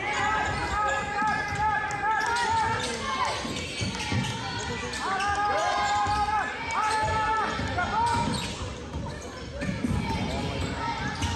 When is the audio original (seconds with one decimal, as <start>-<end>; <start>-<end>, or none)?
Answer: 0.0-11.4